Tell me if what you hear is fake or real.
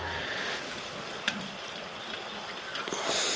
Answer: real